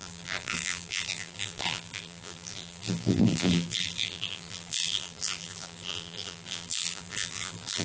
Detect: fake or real fake